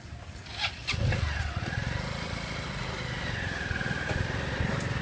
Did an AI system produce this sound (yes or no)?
no